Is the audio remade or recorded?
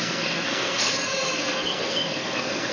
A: remade